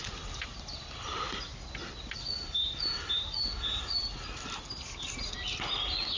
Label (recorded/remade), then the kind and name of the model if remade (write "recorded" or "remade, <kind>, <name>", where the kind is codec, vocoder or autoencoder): recorded